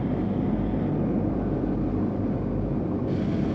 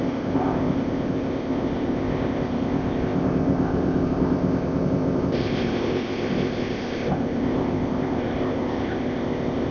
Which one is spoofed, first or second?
second